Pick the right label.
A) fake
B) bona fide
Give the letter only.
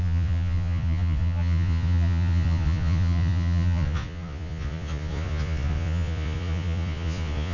A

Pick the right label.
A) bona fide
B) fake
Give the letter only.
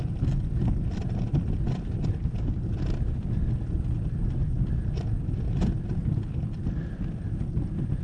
A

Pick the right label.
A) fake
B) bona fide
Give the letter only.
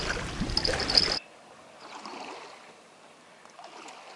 B